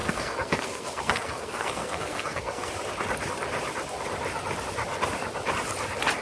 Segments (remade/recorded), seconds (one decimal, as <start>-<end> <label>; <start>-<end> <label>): 0.0-2.7 remade; 2.7-6.2 recorded